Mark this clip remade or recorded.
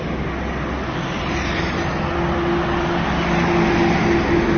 recorded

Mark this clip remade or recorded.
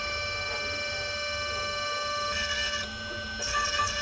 recorded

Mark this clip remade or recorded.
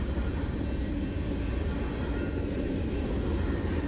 recorded